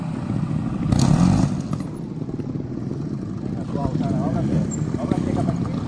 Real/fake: real